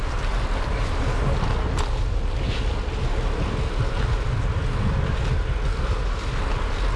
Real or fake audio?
real